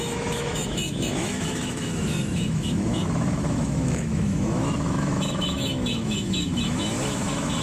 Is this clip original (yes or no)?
no